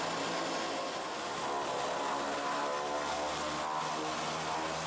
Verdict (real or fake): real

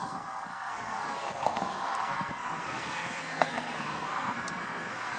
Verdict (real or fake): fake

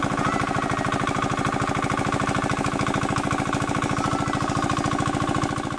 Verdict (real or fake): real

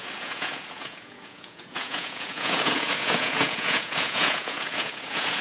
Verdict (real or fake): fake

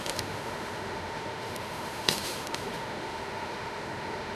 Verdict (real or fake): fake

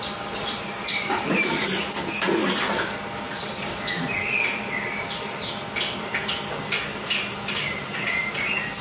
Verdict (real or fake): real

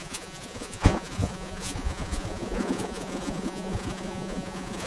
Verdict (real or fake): fake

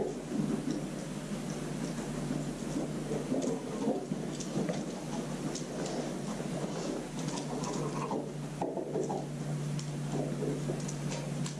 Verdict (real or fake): real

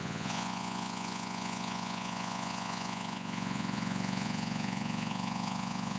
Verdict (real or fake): fake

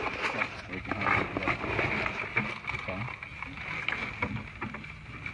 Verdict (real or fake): real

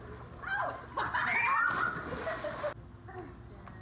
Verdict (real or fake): real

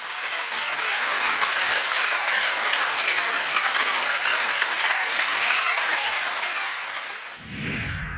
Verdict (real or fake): fake